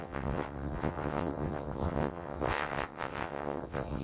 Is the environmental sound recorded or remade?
remade